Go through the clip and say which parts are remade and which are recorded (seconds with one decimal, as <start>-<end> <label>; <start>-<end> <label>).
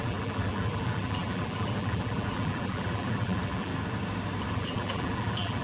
0.0-3.7 remade; 3.7-4.5 recorded; 4.5-5.6 remade